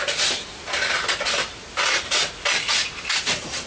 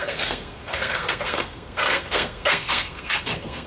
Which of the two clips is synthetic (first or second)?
second